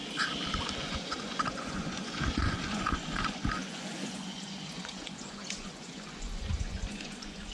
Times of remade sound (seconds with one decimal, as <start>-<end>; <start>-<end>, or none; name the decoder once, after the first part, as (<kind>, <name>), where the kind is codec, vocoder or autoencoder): 0.8-7.5 (vocoder, Vocos)